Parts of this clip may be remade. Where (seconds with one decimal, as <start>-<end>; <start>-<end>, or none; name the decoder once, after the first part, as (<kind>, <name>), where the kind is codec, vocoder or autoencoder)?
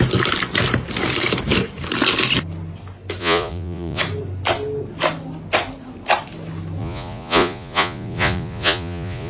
3.2-4.0 (vocoder, Vocos); 6.8-9.3